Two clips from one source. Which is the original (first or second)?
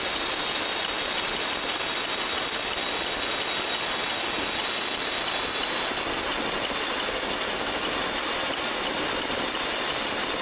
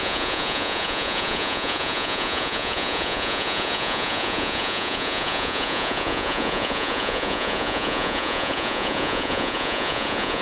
first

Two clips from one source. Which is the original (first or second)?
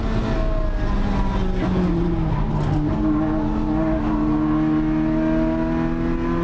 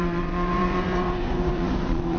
first